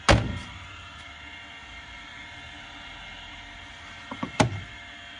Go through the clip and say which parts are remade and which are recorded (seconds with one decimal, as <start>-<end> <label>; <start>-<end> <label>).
0.0-0.4 recorded; 0.4-1.1 remade; 1.1-1.6 recorded; 1.6-4.7 remade; 4.7-5.2 recorded